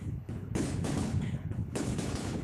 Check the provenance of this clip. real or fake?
fake